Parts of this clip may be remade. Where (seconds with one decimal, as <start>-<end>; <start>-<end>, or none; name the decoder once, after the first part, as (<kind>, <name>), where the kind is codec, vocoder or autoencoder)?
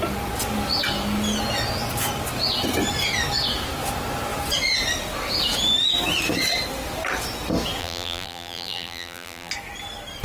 7.8-9.5 (vocoder, BigVGAN v2)